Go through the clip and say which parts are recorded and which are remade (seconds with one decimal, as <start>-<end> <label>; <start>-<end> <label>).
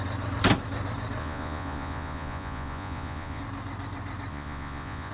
0.0-1.2 recorded; 1.2-3.4 remade; 3.4-4.3 recorded; 4.3-5.1 remade